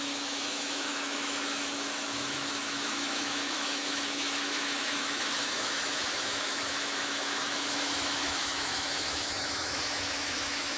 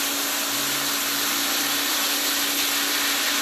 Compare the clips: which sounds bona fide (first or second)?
second